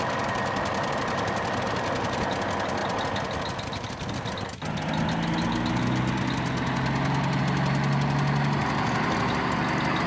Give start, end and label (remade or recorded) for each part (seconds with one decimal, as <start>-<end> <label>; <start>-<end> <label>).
0.0-10.1 recorded

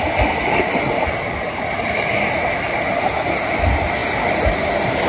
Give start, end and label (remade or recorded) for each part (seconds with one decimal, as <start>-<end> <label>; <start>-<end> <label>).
0.0-5.1 recorded

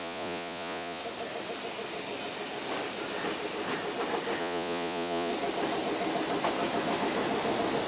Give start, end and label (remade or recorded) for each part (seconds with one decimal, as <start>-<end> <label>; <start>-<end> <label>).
0.0-1.0 remade; 1.0-4.4 recorded; 4.4-5.3 remade; 5.3-7.9 recorded

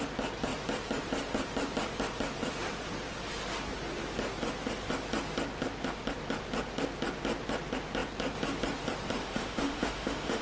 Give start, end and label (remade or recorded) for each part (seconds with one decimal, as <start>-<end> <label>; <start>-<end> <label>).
0.0-9.2 recorded; 9.2-10.4 remade

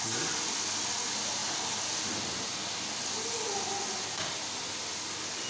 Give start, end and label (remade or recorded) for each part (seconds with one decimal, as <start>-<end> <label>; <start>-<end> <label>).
0.0-5.5 recorded

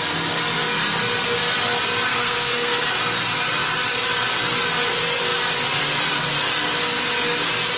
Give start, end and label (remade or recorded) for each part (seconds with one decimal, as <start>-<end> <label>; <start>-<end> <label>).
0.0-2.1 recorded; 2.1-2.9 remade; 2.9-7.8 recorded

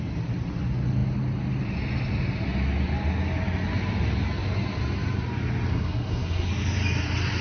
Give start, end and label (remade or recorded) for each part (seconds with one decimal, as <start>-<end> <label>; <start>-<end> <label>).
0.0-5.7 recorded; 5.7-6.5 remade; 6.5-7.4 recorded

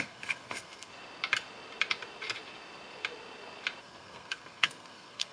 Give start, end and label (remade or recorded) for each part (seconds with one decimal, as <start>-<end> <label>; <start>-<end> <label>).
0.0-0.9 remade; 0.9-3.8 recorded; 3.8-5.3 remade